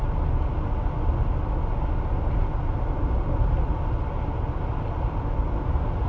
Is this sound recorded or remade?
recorded